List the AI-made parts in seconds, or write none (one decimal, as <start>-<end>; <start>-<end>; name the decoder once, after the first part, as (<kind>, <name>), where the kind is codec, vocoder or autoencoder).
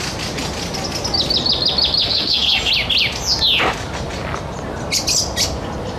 2.0-2.7 (codec, SNAC)